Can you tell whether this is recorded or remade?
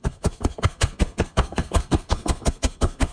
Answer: remade